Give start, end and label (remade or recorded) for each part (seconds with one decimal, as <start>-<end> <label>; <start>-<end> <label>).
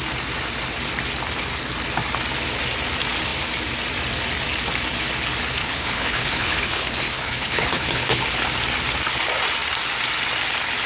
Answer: 0.0-5.6 recorded; 5.6-8.2 remade; 8.2-10.9 recorded